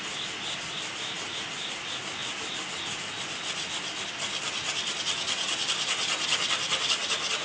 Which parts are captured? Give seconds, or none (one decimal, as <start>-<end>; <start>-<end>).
0.0-7.4